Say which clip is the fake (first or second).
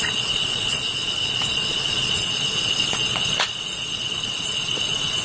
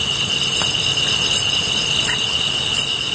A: first